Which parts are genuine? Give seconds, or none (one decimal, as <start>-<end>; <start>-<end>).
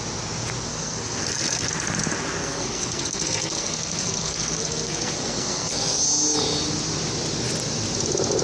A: 0.0-0.7; 1.7-2.4; 6.0-8.4